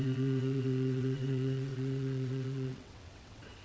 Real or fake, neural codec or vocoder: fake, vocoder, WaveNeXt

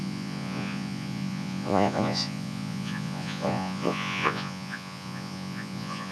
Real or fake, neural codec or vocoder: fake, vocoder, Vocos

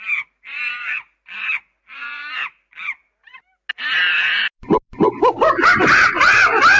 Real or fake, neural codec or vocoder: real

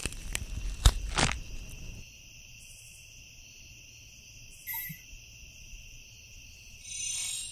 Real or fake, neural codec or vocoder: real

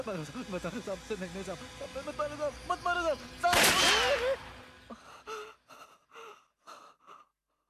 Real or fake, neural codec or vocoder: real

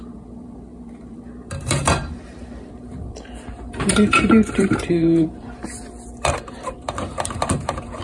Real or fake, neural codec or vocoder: fake, vocoder, BigVGAN v2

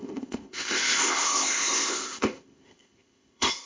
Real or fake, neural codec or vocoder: fake, codec, ZipCodec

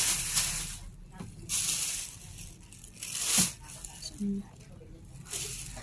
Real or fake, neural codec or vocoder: real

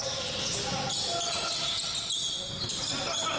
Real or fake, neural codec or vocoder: real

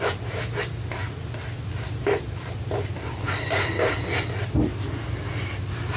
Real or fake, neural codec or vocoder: real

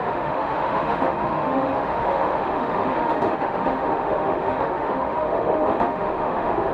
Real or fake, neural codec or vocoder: fake, autoencoder, DAC-VAE